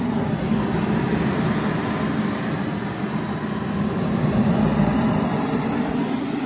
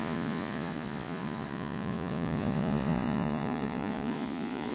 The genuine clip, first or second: first